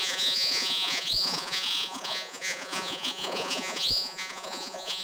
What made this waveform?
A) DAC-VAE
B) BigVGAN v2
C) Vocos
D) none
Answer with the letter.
C